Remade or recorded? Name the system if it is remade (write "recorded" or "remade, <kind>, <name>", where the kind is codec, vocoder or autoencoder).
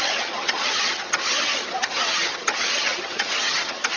remade, vocoder, HiFi-GAN